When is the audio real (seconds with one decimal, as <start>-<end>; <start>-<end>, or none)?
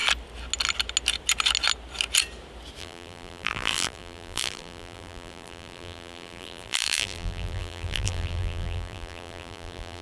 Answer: 0.0-2.8